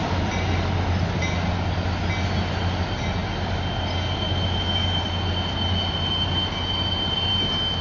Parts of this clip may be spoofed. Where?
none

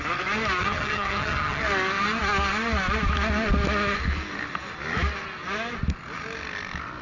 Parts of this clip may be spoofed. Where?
0.6-1.6 (vocoder, HiFi-GAN)